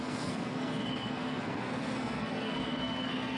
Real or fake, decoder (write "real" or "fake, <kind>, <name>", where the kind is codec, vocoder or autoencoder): fake, codec, SNAC